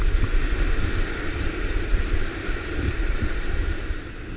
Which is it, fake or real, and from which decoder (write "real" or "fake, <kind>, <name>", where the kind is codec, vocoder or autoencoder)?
fake, vocoder, BigVGAN v2